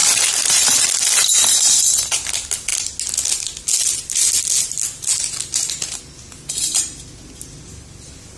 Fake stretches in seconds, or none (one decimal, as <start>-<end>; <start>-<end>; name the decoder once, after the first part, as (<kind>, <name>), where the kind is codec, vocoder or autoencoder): 0.0-1.0 (vocoder, BigVGAN v2)